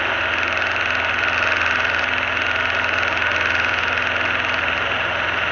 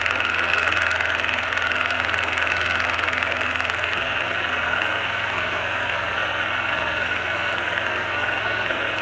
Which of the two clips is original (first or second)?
first